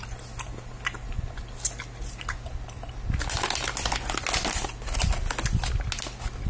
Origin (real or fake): real